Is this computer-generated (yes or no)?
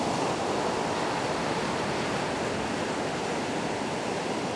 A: no